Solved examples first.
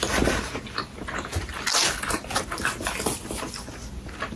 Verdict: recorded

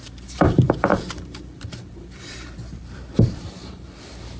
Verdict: remade